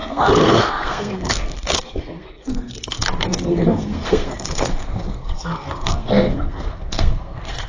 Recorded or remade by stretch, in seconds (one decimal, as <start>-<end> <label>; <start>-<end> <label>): 0.0-7.7 remade